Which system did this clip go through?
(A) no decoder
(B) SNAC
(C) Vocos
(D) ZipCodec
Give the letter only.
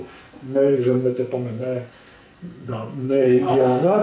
B